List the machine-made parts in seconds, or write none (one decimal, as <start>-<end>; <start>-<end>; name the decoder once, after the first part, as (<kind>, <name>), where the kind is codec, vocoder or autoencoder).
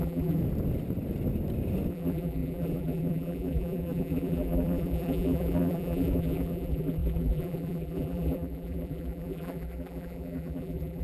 0.0-0.4 (vocoder, BigVGAN v2); 1.9-11.0